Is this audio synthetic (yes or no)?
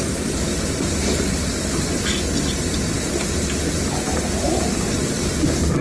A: no